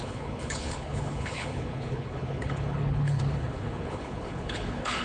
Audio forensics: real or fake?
fake